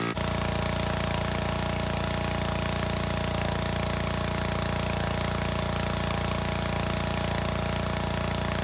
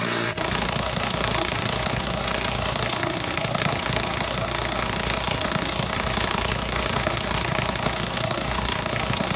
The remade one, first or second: second